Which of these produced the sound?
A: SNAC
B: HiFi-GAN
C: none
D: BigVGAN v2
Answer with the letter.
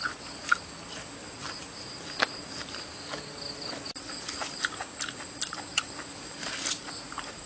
C